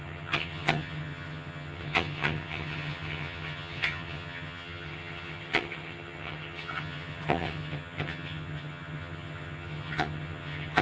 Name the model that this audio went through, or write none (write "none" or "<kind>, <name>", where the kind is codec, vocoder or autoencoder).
vocoder, HiFi-GAN